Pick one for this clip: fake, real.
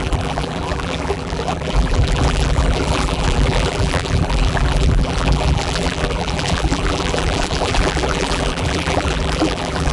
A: fake